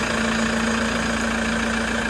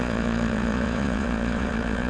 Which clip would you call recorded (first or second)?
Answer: first